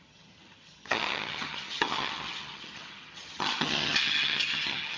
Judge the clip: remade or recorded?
remade